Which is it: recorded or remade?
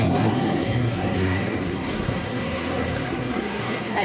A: remade